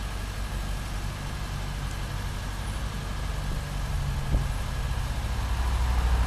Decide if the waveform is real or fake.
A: real